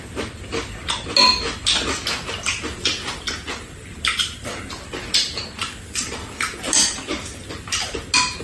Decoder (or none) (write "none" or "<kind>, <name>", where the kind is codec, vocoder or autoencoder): none